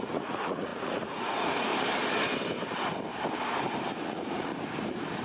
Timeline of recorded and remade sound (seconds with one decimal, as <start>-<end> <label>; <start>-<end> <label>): 0.0-1.7 remade; 1.7-3.9 recorded; 3.9-4.5 remade; 4.5-5.2 recorded